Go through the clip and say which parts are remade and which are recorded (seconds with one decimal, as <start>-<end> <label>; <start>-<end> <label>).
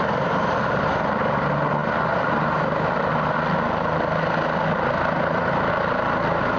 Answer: 0.0-6.6 recorded